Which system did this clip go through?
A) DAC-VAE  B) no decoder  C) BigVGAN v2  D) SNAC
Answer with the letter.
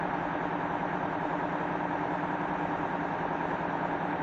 B